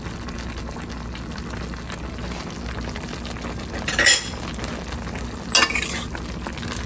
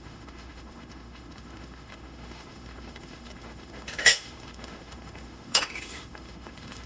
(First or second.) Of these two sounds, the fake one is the second